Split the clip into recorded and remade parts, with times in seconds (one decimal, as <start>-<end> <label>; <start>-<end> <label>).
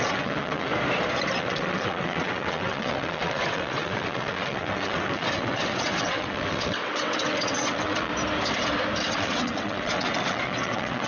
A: 0.0-0.7 remade; 0.7-1.3 recorded; 1.3-8.1 remade; 8.1-9.1 recorded; 9.1-11.1 remade